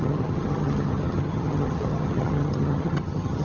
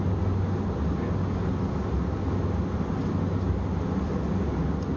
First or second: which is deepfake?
first